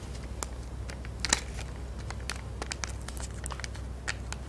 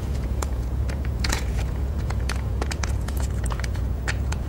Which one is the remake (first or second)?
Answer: second